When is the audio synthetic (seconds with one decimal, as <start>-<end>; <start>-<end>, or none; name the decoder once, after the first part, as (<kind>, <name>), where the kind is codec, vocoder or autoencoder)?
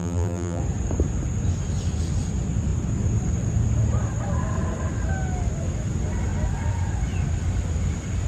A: 0.0-0.6 (vocoder, BigVGAN v2)